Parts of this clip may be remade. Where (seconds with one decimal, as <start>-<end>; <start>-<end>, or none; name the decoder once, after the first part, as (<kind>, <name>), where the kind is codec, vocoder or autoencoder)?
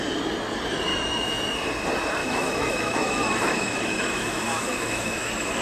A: 0.9-1.4 (autoencoder, DAC-VAE); 2.2-5.6